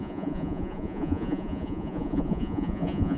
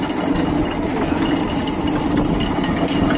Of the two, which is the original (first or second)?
second